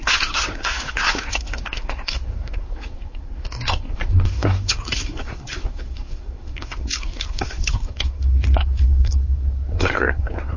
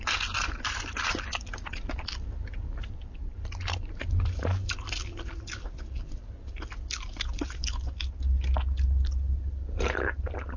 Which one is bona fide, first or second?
second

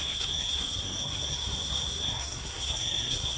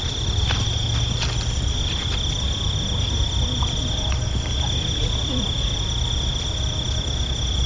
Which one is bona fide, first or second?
second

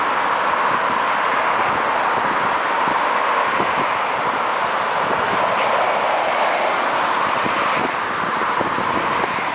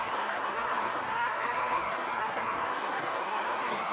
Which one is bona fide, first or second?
first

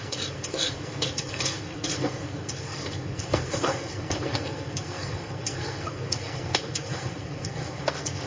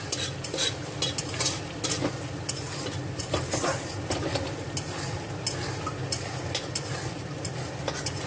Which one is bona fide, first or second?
second